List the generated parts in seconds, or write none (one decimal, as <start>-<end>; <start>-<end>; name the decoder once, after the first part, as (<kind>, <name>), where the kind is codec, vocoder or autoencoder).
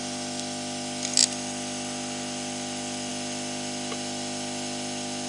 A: none